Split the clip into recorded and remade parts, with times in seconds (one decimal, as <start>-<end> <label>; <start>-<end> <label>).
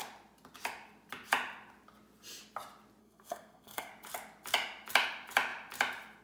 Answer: 0.0-3.0 recorded; 3.0-3.9 remade; 3.9-6.2 recorded